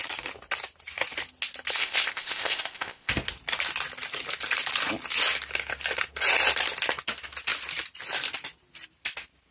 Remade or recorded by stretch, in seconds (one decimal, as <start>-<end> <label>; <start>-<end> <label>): 0.0-1.8 recorded; 1.8-3.1 remade; 3.1-9.5 recorded